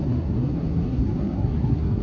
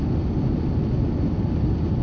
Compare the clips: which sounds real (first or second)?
second